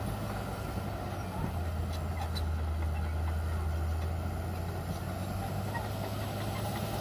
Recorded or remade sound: recorded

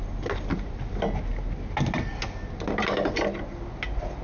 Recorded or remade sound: recorded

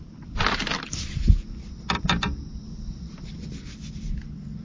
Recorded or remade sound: recorded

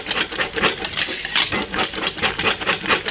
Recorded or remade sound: recorded